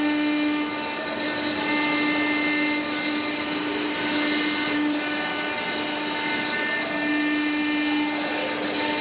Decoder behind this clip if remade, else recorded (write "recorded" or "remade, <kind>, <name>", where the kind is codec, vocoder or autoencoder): recorded